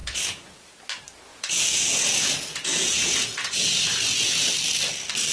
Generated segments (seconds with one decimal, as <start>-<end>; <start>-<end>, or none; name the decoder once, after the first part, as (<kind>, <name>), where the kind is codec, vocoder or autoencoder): 0.0-0.7 (vocoder, Vocos); 1.3-4.5